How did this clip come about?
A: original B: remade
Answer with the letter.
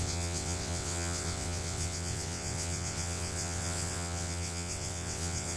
B